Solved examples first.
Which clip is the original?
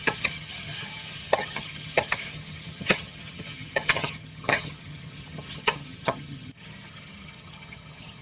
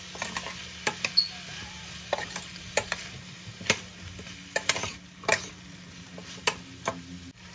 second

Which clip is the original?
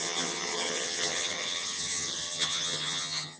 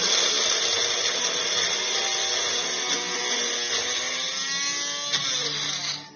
second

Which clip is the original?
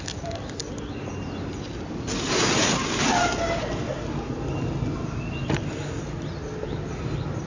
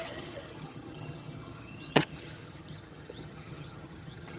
first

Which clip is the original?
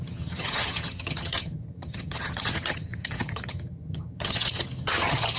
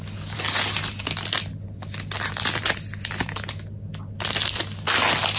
second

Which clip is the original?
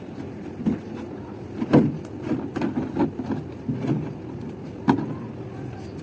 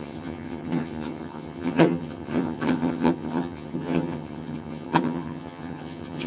first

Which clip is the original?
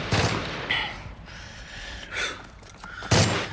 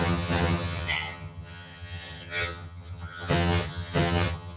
first